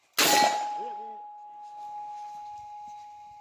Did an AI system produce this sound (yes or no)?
no